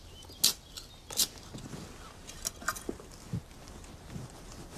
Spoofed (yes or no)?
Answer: no